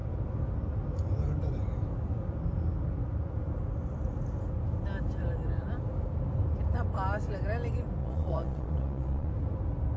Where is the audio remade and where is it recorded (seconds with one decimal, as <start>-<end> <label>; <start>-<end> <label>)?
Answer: 0.0-8.0 recorded; 8.0-9.3 remade; 9.3-10.0 recorded